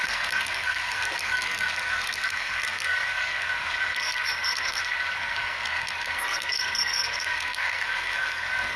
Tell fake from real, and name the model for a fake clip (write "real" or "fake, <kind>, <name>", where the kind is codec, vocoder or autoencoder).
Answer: fake, codec, SNAC